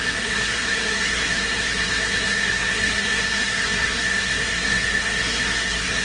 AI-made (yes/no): yes